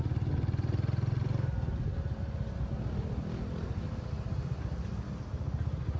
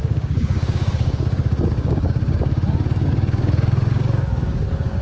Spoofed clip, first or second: second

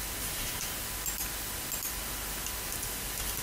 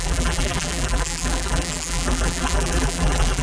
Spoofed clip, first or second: second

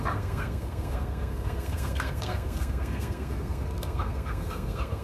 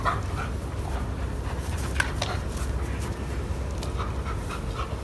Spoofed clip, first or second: first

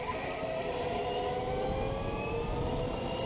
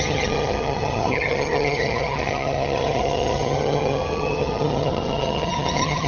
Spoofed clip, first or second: second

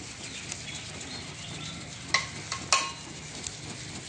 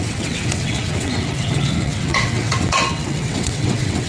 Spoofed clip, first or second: second